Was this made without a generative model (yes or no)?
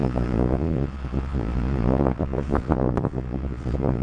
no